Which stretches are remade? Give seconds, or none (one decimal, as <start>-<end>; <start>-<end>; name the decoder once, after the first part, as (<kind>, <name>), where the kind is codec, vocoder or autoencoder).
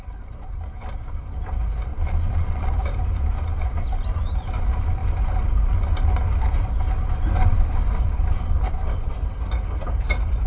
1.9-2.7 (vocoder, Vocos)